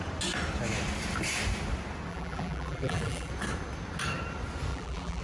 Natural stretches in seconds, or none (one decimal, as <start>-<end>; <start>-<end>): 0.0-2.1; 3.3-4.7